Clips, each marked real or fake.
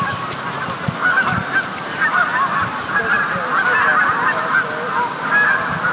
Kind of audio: real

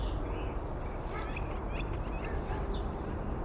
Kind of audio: real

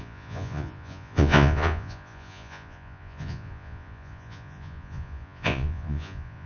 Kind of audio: fake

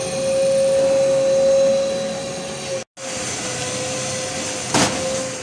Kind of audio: real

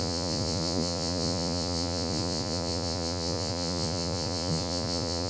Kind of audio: fake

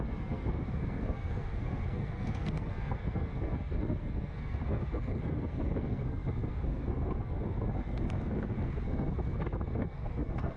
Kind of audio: fake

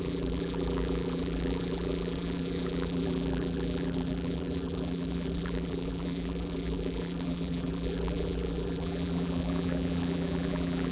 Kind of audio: fake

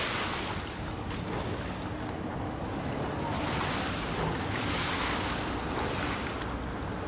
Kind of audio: real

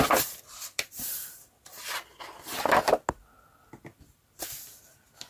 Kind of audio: real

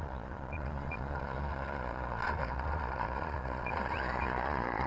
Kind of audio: fake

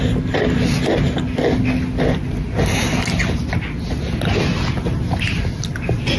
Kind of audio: real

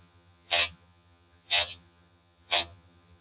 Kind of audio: fake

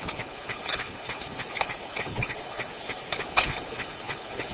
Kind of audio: fake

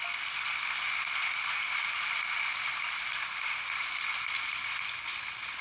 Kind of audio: real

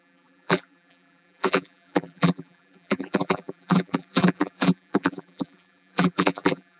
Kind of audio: fake